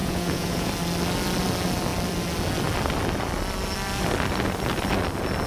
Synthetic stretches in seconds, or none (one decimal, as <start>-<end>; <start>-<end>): 0.0-0.7